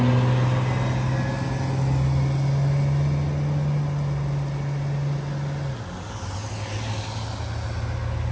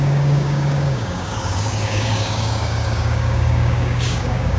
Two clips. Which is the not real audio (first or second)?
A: second